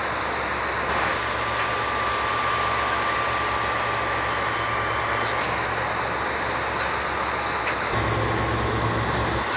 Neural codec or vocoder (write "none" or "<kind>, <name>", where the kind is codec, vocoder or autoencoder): none